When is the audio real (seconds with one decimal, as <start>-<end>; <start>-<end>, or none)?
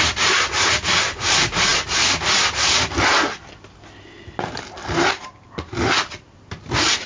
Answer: 0.0-7.1